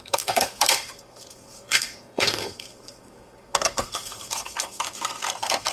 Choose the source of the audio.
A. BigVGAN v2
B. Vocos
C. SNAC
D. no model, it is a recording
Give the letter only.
C